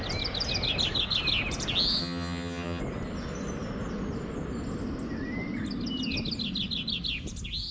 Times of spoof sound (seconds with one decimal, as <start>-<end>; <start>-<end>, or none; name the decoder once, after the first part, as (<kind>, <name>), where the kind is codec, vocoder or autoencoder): 2.0-2.8 (vocoder, HiFi-GAN)